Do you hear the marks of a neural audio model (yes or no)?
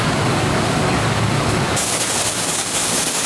yes